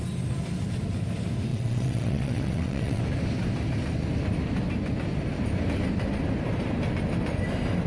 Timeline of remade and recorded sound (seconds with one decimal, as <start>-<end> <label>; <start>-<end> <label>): 0.0-1.5 recorded; 1.5-3.0 remade; 3.0-7.9 recorded